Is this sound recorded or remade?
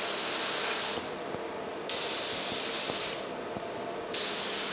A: recorded